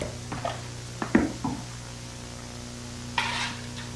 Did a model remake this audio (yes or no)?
no